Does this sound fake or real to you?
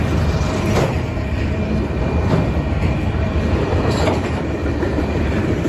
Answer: fake